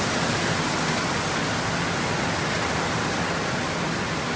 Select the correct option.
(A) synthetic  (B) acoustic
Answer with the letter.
B